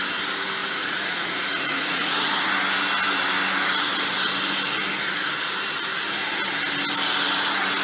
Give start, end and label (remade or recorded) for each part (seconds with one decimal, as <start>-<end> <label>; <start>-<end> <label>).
0.0-0.6 recorded; 0.6-2.4 remade; 2.4-7.8 recorded